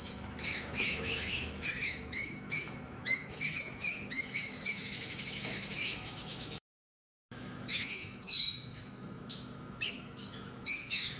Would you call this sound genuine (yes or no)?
no